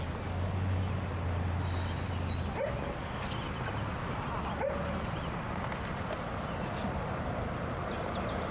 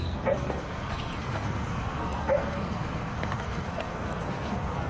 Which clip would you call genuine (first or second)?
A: first